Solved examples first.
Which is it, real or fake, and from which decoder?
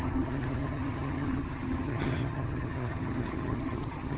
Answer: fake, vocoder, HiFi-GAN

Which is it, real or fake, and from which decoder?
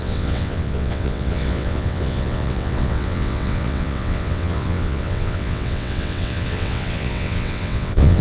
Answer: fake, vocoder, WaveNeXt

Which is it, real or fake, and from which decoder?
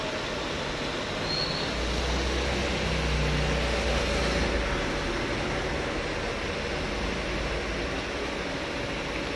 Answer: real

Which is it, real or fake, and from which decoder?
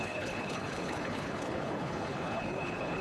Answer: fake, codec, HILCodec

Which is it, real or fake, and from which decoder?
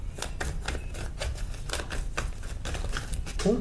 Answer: real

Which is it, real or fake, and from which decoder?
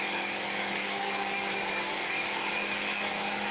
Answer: fake, codec, DAC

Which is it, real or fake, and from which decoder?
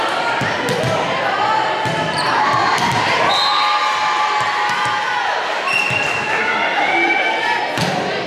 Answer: real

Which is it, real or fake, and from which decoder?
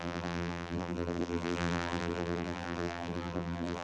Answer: fake, vocoder, BigVGAN v2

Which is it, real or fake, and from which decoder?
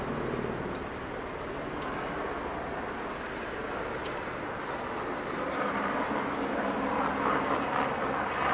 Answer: real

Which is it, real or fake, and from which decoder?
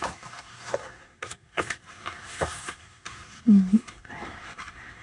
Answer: fake, codec, SNAC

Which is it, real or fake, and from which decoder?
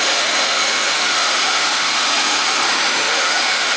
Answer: fake, autoencoder, DAC-VAE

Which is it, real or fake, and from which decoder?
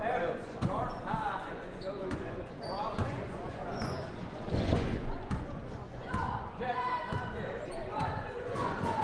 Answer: fake, vocoder, Vocos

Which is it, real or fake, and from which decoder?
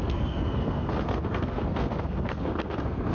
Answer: fake, codec, SNAC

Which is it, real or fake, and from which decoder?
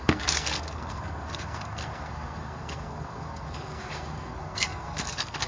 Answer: fake, codec, SNAC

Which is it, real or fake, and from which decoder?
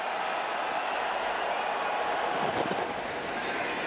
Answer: real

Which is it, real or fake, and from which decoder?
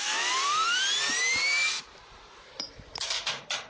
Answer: fake, vocoder, BigVGAN v2